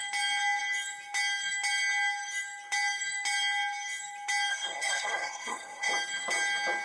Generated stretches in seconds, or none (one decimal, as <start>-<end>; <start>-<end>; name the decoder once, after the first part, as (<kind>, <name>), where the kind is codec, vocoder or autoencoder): 4.5-5.9 (codec, SNAC)